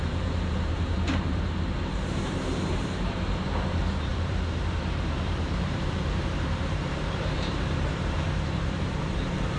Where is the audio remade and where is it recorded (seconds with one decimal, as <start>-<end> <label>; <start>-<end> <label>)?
0.0-9.6 remade